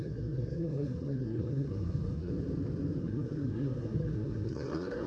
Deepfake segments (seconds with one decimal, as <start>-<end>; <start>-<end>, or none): 0.0-2.3; 3.0-5.1